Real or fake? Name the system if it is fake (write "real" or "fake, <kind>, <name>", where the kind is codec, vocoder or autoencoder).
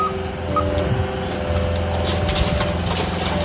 real